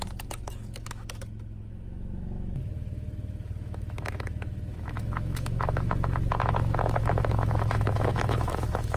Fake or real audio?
fake